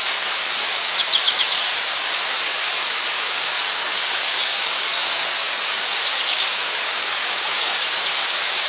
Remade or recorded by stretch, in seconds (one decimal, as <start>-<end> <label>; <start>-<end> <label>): 0.0-8.7 remade